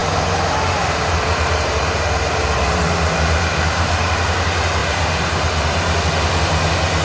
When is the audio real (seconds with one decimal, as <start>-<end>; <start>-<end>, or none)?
4.1-4.8; 6.0-7.0